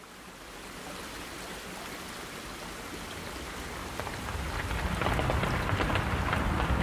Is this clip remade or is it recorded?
recorded